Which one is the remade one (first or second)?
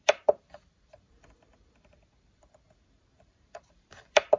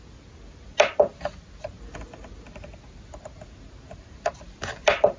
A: first